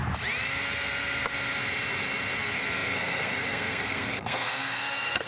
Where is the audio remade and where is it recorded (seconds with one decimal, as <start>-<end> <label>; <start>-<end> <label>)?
0.0-2.4 recorded; 2.4-5.3 remade